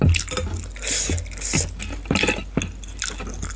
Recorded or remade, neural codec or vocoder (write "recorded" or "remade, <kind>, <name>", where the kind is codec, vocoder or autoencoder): recorded